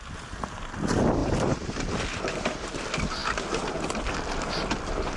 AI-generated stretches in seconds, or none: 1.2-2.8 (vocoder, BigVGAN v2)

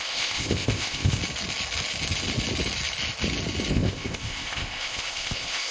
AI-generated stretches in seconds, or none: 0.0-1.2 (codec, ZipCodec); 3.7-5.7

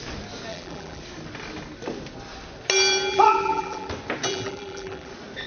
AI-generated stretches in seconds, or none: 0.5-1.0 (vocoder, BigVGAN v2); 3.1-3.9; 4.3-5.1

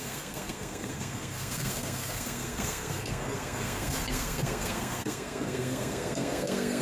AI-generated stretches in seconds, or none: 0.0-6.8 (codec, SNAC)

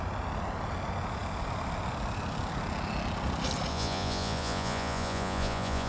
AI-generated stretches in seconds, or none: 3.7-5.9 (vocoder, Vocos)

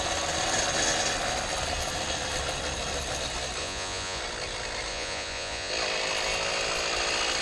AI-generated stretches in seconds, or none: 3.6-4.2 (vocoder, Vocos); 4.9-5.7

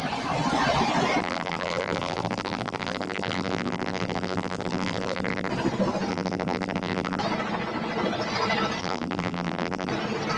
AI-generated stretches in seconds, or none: 1.2-5.5 (vocoder, BigVGAN v2); 6.1-7.2; 8.8-9.9